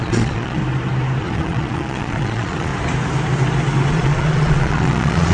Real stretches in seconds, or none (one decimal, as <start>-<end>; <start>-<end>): 0.6-1.2; 2.7-3.9

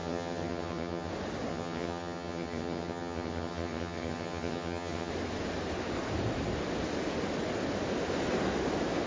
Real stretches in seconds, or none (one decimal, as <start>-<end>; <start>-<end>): 1.1-1.5; 5.1-9.1

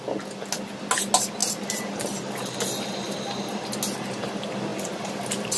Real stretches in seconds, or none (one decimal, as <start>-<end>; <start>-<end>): 0.0-5.6

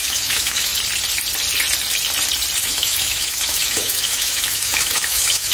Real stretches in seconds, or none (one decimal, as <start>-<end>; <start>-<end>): 0.7-2.6

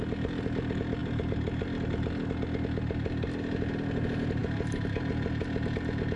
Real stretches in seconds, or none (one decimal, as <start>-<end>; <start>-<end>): 0.0-6.2

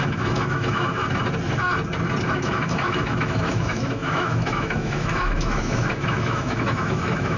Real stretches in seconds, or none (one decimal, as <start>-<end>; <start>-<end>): 1.0-2.3

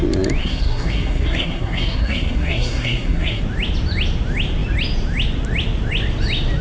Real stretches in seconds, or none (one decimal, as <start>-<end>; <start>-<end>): 0.0-0.4; 3.4-6.6

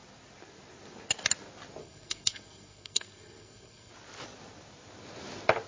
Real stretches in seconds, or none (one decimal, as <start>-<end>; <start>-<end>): 0.0-1.8; 3.9-5.7